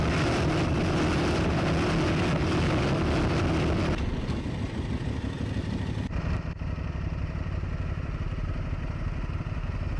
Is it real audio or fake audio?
real